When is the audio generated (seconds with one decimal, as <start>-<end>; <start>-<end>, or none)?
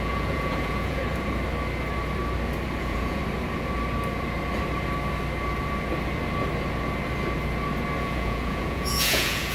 0.0-1.0; 2.8-3.2; 8.0-9.5